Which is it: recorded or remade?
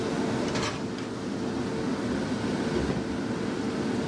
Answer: recorded